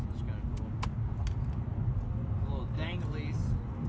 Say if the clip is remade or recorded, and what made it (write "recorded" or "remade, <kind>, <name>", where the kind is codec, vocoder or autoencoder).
recorded